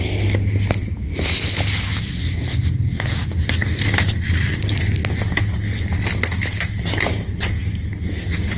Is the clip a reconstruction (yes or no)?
no